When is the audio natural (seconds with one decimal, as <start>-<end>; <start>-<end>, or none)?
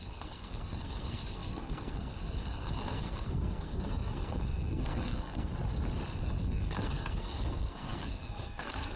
5.5-6.4